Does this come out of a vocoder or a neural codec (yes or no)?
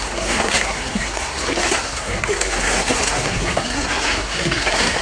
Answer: yes